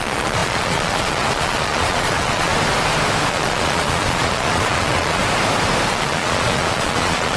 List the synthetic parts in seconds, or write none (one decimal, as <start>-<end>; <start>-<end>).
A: 0.0-2.5; 3.3-5.2; 5.9-7.4